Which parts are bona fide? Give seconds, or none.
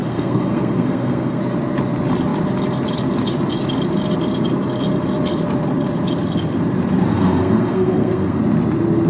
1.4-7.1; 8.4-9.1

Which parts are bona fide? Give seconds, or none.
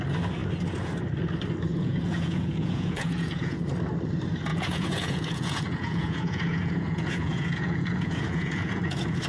0.0-1.7; 3.6-4.5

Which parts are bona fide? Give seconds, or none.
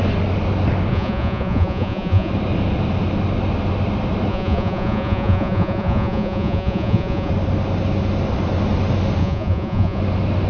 0.0-0.9; 2.3-4.3; 7.3-9.2; 10.0-10.5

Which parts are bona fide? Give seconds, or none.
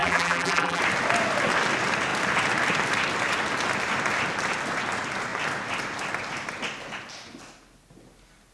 0.8-8.5